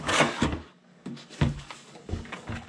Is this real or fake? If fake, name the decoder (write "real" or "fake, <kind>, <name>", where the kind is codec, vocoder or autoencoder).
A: fake, codec, DAC